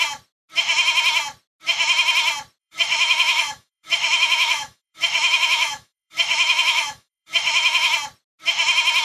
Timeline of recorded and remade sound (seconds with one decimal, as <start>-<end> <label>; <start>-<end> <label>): 0.0-2.6 recorded; 2.6-7.9 remade; 7.9-9.0 recorded